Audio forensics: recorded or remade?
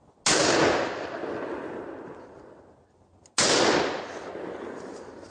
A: recorded